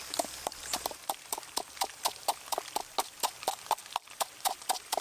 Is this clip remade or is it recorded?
recorded